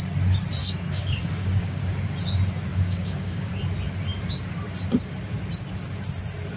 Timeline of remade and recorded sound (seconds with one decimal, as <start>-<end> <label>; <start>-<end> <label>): 0.0-0.6 recorded; 0.6-1.8 remade; 1.8-2.7 recorded; 2.7-3.5 remade; 3.5-6.6 recorded